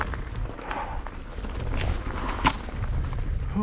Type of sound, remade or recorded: recorded